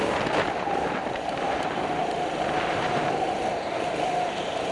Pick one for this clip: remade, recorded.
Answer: remade